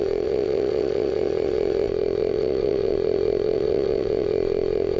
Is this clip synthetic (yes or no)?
yes